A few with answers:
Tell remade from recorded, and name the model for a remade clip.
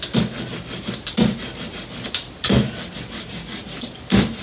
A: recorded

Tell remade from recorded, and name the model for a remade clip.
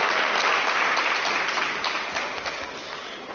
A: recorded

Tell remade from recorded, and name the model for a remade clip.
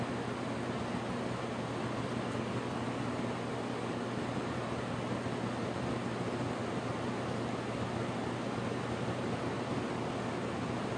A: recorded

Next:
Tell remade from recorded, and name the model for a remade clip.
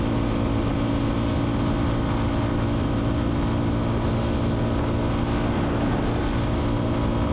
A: recorded